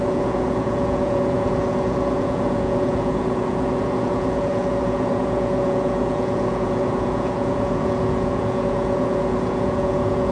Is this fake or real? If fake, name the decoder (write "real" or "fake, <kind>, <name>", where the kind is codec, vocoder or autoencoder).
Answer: fake, vocoder, Vocos